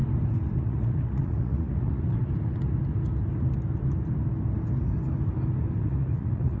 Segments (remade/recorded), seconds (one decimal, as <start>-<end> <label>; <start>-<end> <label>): 0.0-0.6 recorded; 0.6-2.2 remade; 2.2-5.8 recorded; 5.8-6.6 remade